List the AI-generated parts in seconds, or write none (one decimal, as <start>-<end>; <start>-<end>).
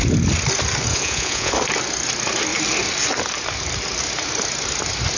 0.9-1.5